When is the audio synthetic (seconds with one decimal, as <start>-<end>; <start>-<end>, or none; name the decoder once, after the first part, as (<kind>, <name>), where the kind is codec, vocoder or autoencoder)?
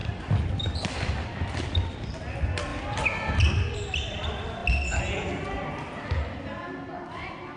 none